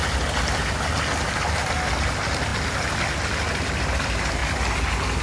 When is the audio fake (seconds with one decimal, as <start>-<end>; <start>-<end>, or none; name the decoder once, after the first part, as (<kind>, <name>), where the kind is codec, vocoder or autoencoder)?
none